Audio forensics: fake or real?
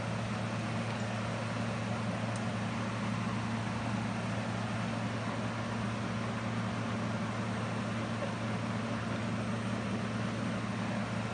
real